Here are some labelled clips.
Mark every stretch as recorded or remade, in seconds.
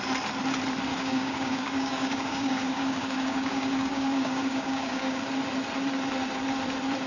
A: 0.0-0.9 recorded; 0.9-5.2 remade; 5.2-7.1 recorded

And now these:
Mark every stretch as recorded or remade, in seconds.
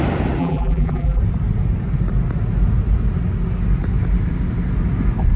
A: 0.0-0.4 recorded; 0.4-1.2 remade; 1.2-5.4 recorded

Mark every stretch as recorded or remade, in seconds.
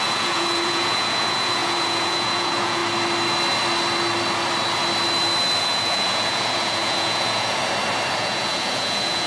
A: 0.0-2.8 remade; 2.8-5.6 recorded; 5.6-7.6 remade; 7.6-8.1 recorded; 8.1-9.3 remade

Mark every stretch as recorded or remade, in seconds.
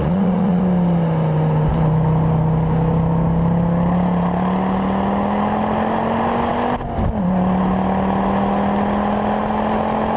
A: 0.0-0.6 remade; 0.6-10.2 recorded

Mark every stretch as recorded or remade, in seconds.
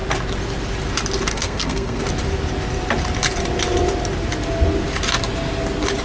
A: 0.0-1.3 recorded; 1.3-2.0 remade; 2.0-6.0 recorded